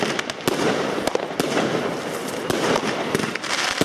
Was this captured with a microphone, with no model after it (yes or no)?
yes